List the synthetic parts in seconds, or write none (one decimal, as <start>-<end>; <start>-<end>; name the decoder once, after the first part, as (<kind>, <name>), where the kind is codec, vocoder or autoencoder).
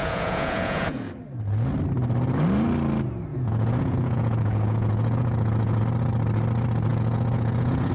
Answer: 0.0-1.0 (vocoder, Vocos); 3.3-5.8; 6.9-7.9